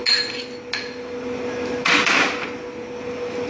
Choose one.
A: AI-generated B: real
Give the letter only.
B